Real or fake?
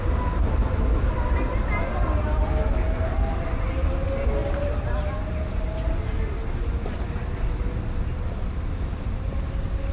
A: real